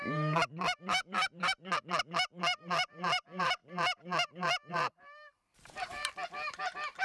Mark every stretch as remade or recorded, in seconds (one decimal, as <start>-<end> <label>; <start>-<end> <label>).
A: 0.0-1.6 remade; 1.6-2.6 recorded; 2.6-3.6 remade; 3.6-4.7 recorded; 4.7-6.0 remade; 6.0-7.0 recorded